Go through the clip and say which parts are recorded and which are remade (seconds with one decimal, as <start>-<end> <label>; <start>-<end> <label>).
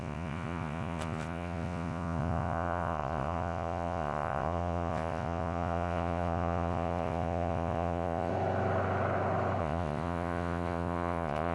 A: 0.0-8.3 remade; 8.3-9.6 recorded; 9.6-11.5 remade